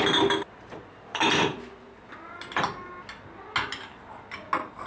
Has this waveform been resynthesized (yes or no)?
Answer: no